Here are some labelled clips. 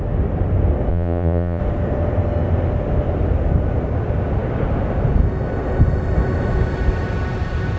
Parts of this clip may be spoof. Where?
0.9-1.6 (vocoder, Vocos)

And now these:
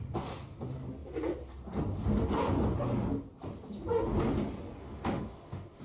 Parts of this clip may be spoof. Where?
4.8-5.8 (autoencoder, DAC-VAE)